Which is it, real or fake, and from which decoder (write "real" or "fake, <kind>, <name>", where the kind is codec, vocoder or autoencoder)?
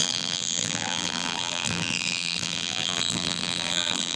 fake, vocoder, BigVGAN v2